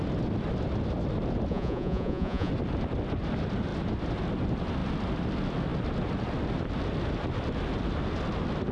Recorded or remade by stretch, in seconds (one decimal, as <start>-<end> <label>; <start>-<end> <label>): 0.0-1.5 recorded; 1.5-2.5 remade; 2.5-8.7 recorded